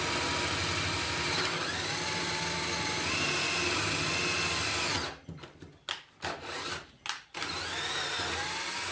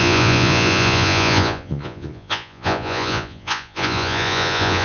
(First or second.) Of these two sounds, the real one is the first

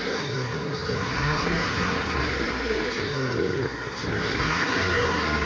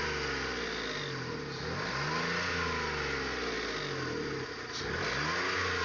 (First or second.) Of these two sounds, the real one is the second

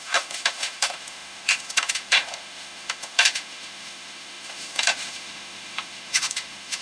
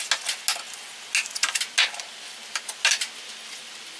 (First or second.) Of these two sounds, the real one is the second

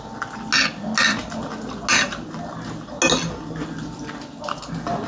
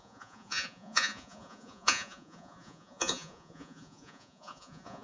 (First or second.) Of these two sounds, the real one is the first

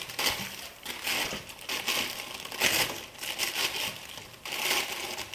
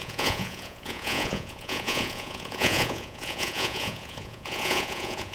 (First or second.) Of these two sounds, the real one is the first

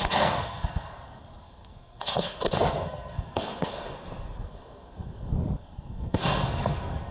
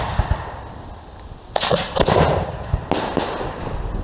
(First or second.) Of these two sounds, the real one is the second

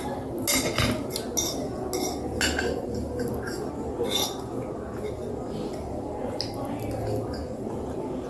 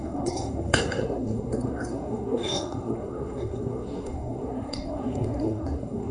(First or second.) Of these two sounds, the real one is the first